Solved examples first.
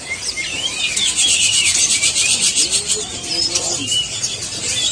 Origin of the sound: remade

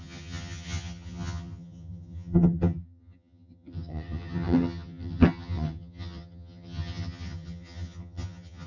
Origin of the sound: remade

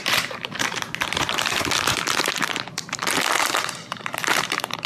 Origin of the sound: remade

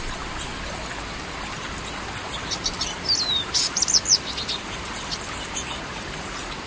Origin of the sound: recorded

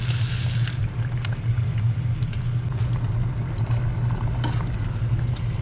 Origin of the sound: recorded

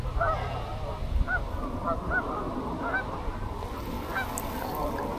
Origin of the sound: recorded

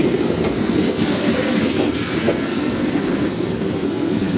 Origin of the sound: remade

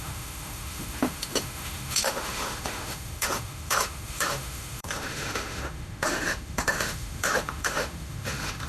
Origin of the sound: remade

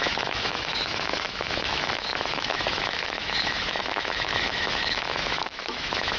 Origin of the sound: remade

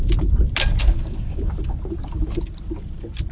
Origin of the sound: recorded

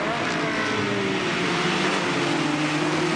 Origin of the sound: recorded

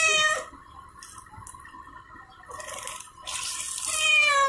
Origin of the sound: recorded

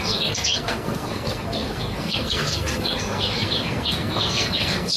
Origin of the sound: remade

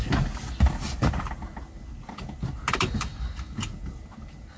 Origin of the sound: recorded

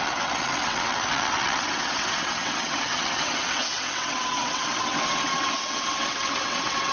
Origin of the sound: remade